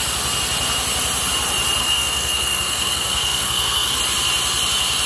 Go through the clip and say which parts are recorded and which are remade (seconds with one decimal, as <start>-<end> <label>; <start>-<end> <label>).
0.0-1.8 recorded; 1.8-4.0 remade; 4.0-5.1 recorded